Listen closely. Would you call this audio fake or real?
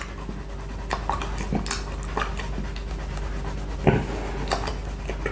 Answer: real